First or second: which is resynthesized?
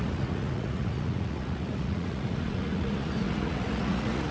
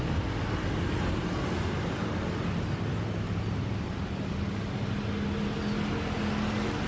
first